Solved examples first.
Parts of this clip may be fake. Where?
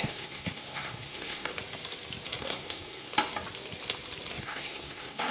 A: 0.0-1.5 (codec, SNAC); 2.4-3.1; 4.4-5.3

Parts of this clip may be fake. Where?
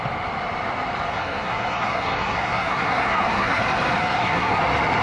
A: 1.1-3.6 (codec, SNAC); 4.0-4.6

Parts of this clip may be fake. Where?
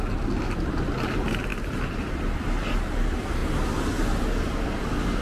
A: none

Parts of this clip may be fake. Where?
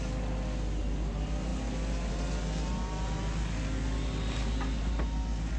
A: none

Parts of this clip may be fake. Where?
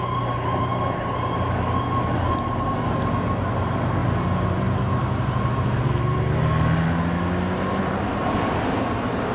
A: none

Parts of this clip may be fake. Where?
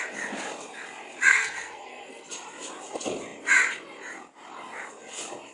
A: 1.3-2.3 (codec, SNAC)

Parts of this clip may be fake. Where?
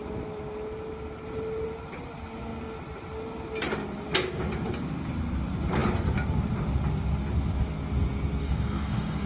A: 8.4-9.3 (codec, DAC)